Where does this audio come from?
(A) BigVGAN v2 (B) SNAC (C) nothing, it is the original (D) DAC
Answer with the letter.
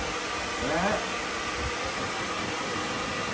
C